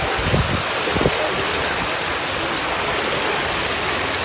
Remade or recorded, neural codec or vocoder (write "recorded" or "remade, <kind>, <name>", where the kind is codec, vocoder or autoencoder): recorded